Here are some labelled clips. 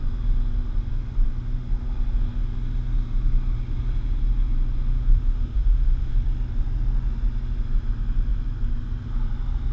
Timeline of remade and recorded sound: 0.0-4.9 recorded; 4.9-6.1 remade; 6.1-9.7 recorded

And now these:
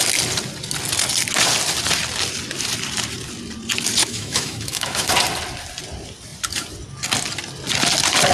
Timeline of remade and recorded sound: 0.0-4.0 recorded; 4.0-5.1 remade; 5.1-8.3 recorded

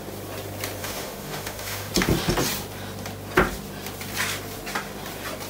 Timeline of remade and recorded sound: 0.0-0.8 recorded; 0.8-1.9 remade; 1.9-5.5 recorded

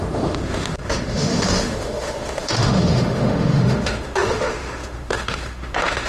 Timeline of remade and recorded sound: 0.0-6.1 remade